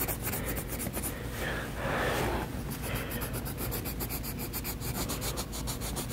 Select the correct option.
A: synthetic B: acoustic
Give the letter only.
B